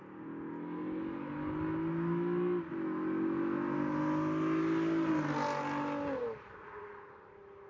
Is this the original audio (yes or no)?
yes